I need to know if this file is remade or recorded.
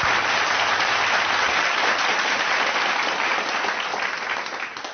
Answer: recorded